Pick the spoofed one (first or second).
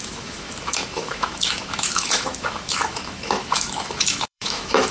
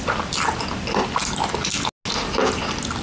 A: first